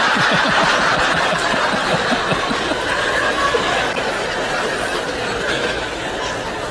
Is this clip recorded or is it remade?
recorded